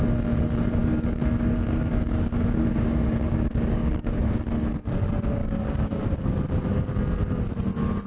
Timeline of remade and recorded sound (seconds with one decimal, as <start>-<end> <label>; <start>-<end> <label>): 0.0-0.8 recorded; 0.8-4.2 remade; 4.2-5.4 recorded; 5.4-6.0 remade; 6.0-8.1 recorded